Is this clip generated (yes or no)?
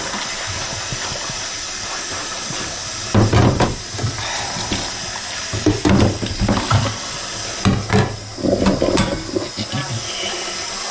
no